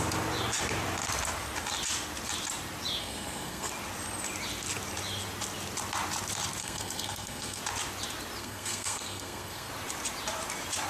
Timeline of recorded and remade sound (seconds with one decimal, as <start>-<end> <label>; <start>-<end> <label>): 0.0-3.0 recorded; 3.0-3.7 remade; 3.7-6.6 recorded; 6.6-7.6 remade; 7.6-8.4 recorded; 8.4-9.7 remade; 9.7-10.9 recorded